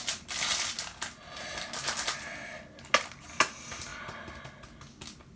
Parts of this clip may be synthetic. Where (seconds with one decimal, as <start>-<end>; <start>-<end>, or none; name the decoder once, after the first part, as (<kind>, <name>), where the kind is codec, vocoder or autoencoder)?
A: none